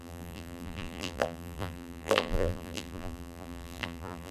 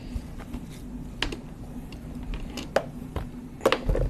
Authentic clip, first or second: second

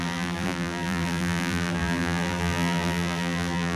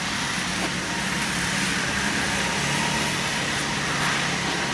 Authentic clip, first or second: second